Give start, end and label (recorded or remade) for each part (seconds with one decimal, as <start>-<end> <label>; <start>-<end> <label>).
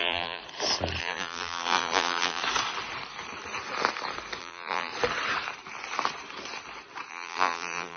0.0-0.4 remade; 0.4-1.0 recorded; 1.0-2.4 remade; 2.4-4.4 recorded; 4.4-4.9 remade; 4.9-7.1 recorded; 7.1-8.0 remade